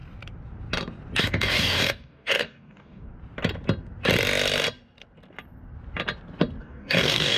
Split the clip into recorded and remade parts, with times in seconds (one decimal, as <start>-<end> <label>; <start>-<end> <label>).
0.0-1.2 recorded; 1.2-3.1 remade; 3.1-6.6 recorded; 6.6-7.4 remade